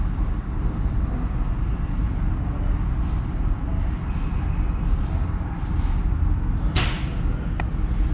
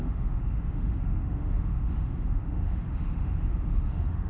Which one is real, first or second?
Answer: first